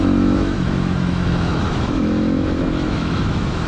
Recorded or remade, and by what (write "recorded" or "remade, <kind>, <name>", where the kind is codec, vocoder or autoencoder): remade, autoencoder, DAC-VAE